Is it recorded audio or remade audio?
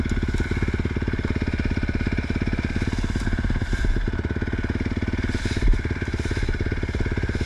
recorded